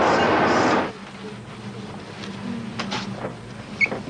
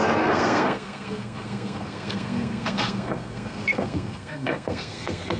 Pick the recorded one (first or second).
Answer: first